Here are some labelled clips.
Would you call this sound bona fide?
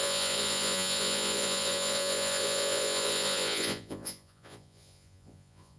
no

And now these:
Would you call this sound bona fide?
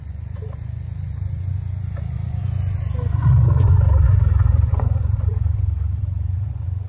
no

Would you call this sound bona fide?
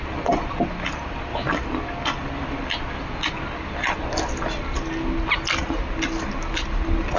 yes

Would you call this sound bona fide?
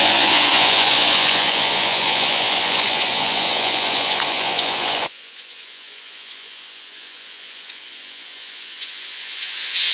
no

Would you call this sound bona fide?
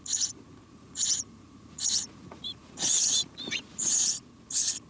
no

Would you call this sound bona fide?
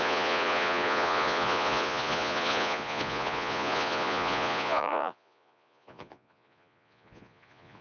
no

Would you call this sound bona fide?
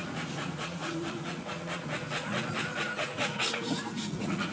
no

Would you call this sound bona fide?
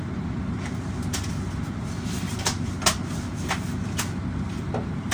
yes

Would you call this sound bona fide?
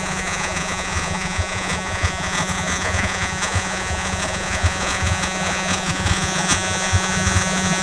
no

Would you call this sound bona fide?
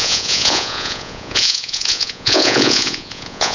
no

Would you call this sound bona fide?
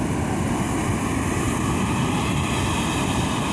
yes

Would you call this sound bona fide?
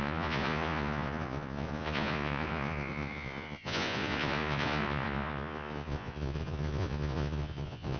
no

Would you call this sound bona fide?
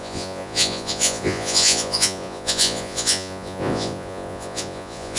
no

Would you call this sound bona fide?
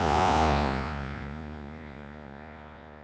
no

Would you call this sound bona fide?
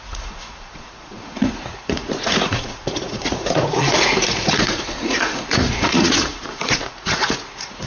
no